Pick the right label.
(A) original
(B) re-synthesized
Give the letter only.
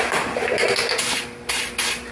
A